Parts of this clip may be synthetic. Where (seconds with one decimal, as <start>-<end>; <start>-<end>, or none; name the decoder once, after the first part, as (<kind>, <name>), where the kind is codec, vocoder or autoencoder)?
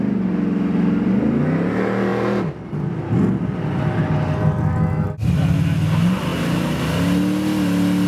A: none